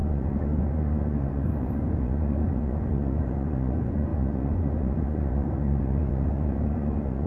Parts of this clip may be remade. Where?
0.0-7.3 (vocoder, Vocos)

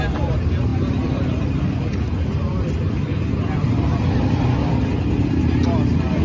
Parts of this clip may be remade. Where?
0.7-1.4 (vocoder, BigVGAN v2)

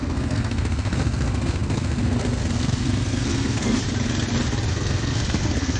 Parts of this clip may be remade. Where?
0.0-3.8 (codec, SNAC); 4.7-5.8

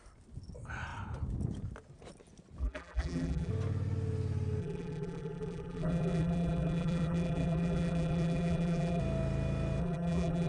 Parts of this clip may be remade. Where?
2.6-3.5 (vocoder, BigVGAN v2); 4.6-9.0; 9.8-10.5

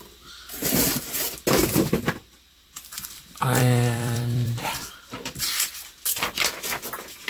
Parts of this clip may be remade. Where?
1.6-5.4 (vocoder, BigVGAN v2)

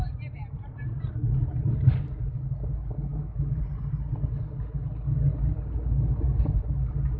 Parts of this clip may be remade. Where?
3.1-3.6 (autoencoder, DAC-VAE)